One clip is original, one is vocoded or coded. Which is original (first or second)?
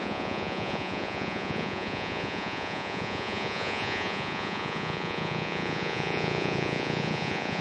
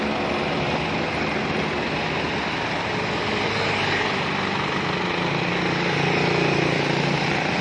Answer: second